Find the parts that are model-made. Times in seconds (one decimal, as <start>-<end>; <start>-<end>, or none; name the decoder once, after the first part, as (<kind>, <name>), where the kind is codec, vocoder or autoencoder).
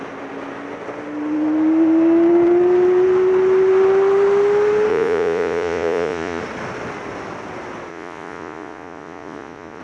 4.9-6.4 (vocoder, Vocos); 7.9-9.8